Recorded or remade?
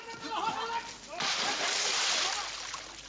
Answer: recorded